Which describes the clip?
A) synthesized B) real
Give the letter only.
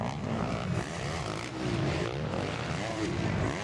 B